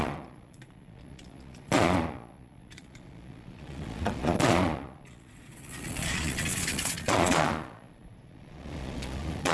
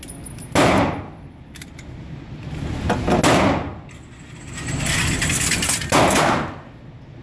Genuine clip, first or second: second